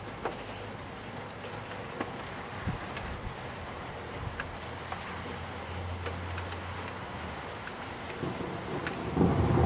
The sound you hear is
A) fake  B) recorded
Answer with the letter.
B